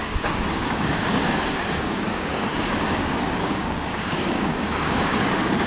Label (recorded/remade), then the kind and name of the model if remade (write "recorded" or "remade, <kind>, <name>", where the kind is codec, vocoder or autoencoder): remade, codec, DAC